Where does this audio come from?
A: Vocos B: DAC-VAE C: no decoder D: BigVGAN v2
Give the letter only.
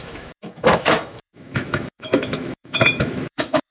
B